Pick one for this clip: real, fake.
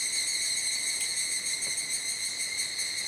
real